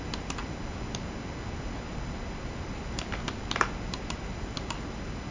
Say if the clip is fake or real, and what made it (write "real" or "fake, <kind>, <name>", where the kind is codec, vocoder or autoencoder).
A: real